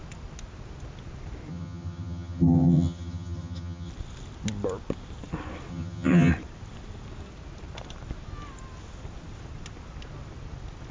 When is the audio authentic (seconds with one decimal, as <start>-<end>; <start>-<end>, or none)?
0.0-1.5; 3.9-5.7; 6.3-10.9

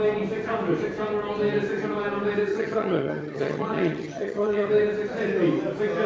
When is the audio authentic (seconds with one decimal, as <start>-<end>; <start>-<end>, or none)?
0.0-2.5; 4.7-6.1

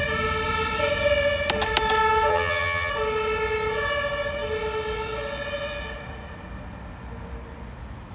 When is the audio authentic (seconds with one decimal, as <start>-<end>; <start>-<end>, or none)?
0.0-2.3; 2.9-8.1

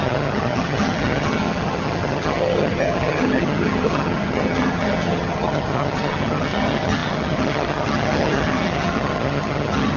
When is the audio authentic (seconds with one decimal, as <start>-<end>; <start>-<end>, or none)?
none

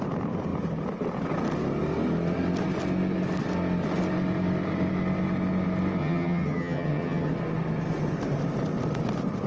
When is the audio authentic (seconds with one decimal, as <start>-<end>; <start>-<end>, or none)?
0.0-6.0; 7.3-9.5

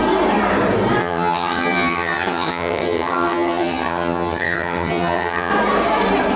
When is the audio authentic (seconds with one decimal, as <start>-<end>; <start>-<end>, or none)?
0.0-1.0; 5.5-6.4

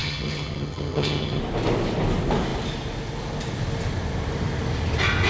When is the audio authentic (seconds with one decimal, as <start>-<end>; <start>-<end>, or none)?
1.4-5.3